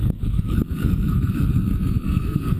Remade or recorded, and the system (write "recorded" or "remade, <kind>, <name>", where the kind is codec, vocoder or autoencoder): remade, codec, SNAC